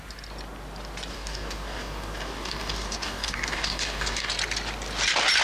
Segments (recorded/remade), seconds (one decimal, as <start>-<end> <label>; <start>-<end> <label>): 0.0-1.1 recorded; 1.1-4.3 remade; 4.3-5.4 recorded